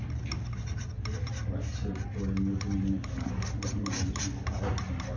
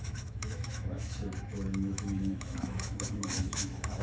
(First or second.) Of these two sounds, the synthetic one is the second